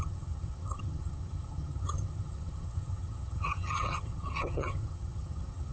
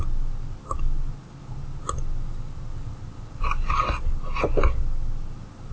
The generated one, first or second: first